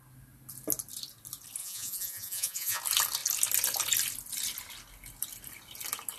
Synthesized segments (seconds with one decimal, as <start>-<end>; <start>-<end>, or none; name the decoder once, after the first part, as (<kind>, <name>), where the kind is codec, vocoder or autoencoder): 1.6-2.8 (vocoder, Vocos)